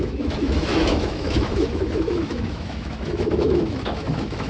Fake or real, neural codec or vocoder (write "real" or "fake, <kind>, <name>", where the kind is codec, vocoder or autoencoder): fake, autoencoder, DAC-VAE